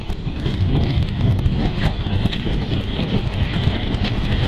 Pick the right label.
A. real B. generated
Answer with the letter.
B